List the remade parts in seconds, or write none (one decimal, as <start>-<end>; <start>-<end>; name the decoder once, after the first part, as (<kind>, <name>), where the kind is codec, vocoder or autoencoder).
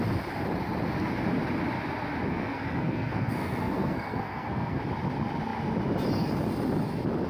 2.3-4.8 (codec, SNAC)